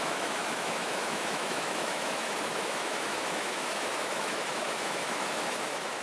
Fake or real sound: fake